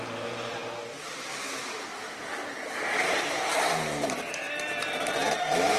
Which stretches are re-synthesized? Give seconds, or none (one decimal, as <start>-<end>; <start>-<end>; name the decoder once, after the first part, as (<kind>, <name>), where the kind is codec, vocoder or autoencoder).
0.0-5.8 (vocoder, BigVGAN v2)